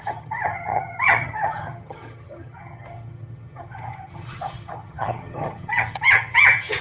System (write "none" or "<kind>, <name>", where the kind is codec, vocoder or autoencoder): vocoder, HiFi-GAN